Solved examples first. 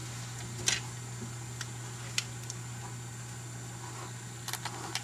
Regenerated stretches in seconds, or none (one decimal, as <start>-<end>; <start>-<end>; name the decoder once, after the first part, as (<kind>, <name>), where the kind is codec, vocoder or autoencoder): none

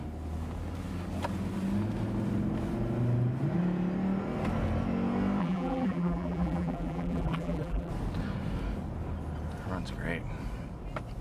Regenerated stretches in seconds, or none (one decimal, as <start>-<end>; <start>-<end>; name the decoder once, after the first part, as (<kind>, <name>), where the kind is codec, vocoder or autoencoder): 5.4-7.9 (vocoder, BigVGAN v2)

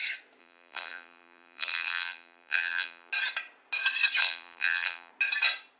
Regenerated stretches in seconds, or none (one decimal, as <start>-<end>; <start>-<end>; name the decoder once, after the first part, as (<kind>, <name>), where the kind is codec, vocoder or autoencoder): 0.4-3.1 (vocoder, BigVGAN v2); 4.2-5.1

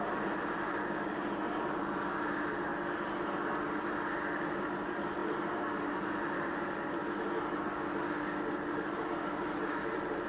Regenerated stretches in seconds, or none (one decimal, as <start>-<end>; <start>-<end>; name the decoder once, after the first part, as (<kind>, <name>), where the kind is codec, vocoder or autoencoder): 0.0-2.7 (vocoder, BigVGAN v2); 4.6-7.0; 8.5-10.3

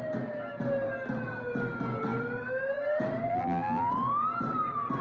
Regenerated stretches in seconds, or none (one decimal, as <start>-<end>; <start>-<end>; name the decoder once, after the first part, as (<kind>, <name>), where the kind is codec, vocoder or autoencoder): 3.3-3.9 (vocoder, BigVGAN v2)

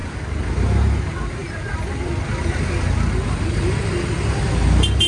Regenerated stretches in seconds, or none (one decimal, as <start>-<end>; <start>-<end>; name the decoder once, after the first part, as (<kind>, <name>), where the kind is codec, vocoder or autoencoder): 1.4-2.3 (vocoder, BigVGAN v2)

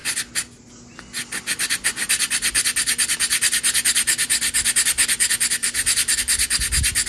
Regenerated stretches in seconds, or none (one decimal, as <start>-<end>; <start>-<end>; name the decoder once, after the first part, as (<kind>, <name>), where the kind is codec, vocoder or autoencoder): 5.6-6.2 (vocoder, BigVGAN v2)